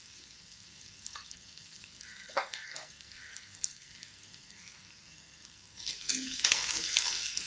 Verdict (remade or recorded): remade